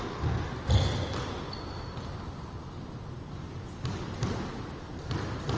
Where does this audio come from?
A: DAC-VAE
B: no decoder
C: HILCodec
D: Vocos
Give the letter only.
B